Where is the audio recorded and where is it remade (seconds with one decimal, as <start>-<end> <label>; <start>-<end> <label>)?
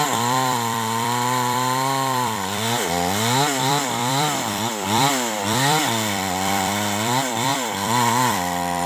0.0-8.9 remade